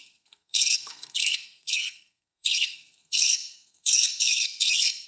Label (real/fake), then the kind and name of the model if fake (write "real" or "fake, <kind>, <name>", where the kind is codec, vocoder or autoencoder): fake, codec, SNAC